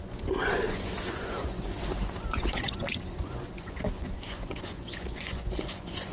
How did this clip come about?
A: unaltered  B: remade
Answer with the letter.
B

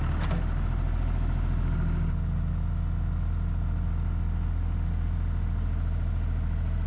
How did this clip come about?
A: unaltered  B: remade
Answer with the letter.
A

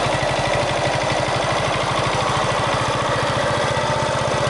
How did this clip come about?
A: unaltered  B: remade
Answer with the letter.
A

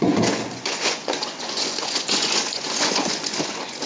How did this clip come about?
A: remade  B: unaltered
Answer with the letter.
A